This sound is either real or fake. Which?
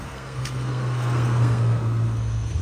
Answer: fake